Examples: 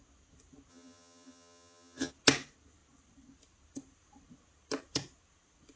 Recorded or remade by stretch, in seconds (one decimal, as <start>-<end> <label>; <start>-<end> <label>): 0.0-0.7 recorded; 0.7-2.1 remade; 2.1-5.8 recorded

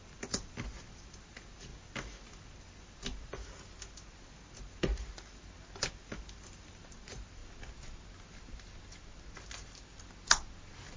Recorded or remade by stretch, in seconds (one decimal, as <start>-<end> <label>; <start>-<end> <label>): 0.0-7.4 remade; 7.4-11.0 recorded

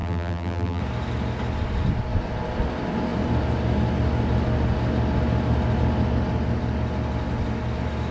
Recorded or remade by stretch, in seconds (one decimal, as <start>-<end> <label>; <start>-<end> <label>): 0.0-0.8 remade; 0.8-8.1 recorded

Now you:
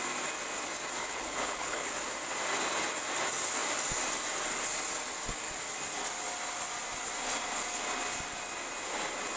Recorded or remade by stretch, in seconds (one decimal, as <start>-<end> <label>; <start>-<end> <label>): 0.0-1.0 recorded; 1.0-1.9 remade; 1.9-9.4 recorded

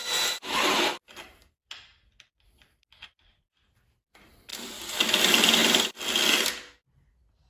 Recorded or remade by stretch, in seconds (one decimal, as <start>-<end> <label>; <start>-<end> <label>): 0.0-0.7 remade; 0.7-4.5 recorded; 4.5-5.1 remade; 5.1-7.5 recorded

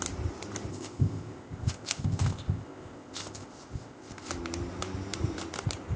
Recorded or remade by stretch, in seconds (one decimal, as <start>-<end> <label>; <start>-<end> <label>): 0.0-0.7 recorded; 0.7-4.3 remade; 4.3-6.0 recorded

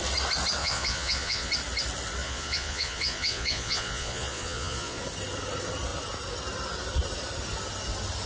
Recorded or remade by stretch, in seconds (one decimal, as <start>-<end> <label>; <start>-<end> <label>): 0.0-0.6 recorded; 0.6-1.5 remade; 1.5-2.2 recorded; 2.2-5.0 remade; 5.0-8.3 recorded

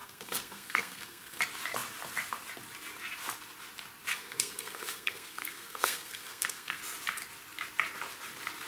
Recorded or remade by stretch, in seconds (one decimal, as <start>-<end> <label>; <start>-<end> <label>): 0.0-1.4 remade; 1.4-4.1 recorded; 4.1-6.8 remade; 6.8-8.7 recorded